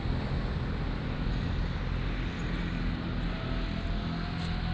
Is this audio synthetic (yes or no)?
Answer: no